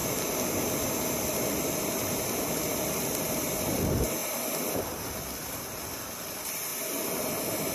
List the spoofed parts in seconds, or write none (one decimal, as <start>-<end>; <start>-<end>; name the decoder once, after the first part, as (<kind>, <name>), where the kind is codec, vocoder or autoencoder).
0.5-6.7 (vocoder, BigVGAN v2)